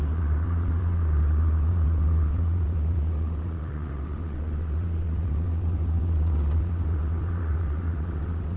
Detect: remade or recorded remade